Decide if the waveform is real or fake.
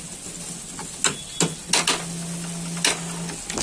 real